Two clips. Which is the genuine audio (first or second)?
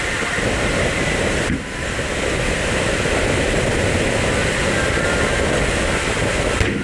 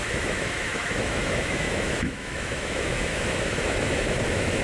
first